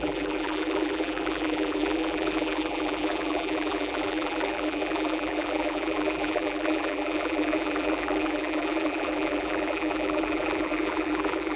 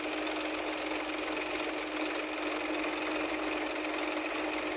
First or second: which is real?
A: second